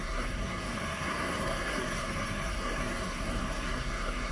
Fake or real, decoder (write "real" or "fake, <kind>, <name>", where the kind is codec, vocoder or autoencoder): fake, codec, SNAC